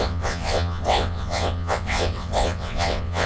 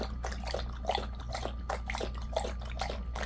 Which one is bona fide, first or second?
second